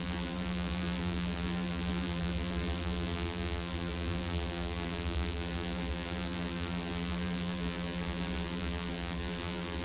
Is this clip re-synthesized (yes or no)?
yes